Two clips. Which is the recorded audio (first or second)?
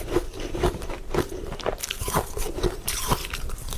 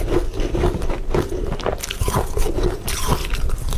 second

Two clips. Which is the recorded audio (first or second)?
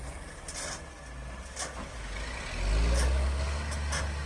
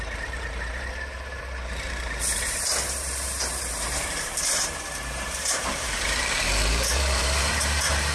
first